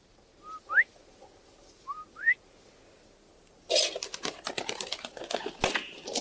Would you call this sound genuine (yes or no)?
yes